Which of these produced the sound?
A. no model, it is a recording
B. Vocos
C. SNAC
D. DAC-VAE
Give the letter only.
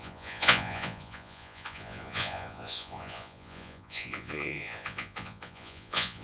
B